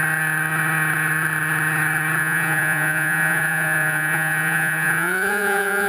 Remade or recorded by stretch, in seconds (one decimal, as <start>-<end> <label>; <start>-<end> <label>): 0.0-2.2 recorded; 2.2-5.9 remade